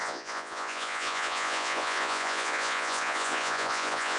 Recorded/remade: remade